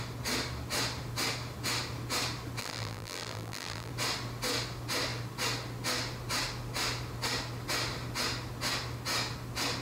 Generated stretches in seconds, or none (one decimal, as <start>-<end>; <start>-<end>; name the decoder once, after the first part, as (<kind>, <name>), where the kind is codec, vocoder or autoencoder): 2.6-3.9 (vocoder, BigVGAN v2)